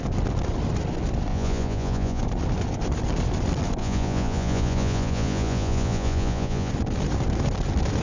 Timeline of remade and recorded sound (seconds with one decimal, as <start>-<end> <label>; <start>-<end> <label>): 0.0-1.3 recorded; 1.3-2.2 remade; 2.2-3.8 recorded; 3.8-6.7 remade; 6.7-8.0 recorded